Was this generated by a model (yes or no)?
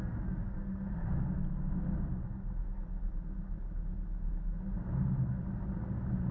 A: no